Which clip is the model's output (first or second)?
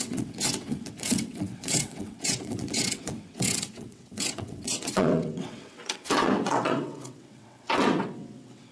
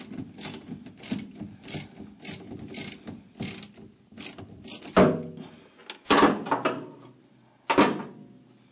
first